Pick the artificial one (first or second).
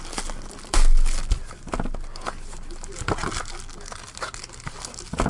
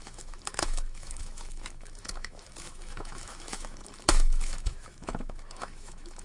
second